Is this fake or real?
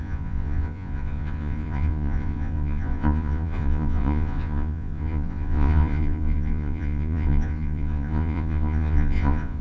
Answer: fake